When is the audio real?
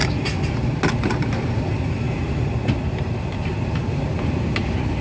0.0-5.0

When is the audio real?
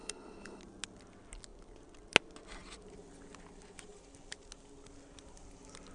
0.6-5.9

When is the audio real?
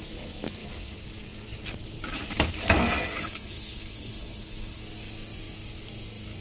0.0-3.1; 4.8-6.4